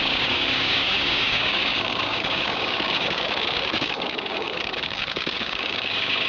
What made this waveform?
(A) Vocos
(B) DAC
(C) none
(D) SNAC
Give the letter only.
B